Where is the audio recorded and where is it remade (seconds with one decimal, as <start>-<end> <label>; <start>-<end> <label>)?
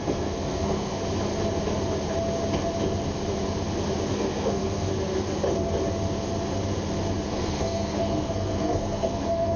0.0-1.0 remade; 1.0-4.1 recorded; 4.1-4.9 remade; 4.9-7.4 recorded; 7.4-9.6 remade